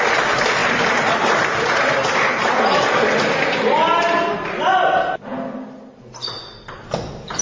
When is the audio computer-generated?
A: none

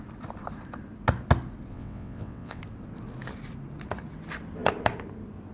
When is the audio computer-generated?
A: 1.7-2.6

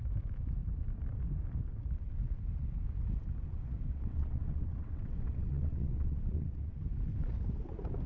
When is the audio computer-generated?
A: 3.9-6.8

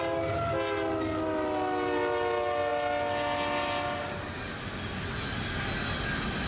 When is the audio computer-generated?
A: none

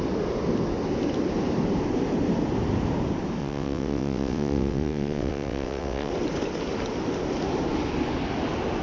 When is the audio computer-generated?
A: 3.4-6.1

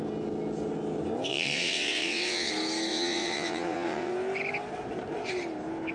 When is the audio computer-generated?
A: 1.3-2.5; 2.9-4.1

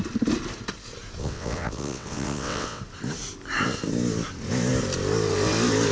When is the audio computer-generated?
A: 1.2-2.8